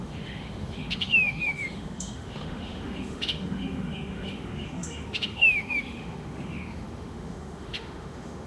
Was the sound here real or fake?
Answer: fake